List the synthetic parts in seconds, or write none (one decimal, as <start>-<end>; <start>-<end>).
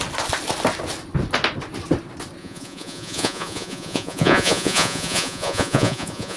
2.4-6.4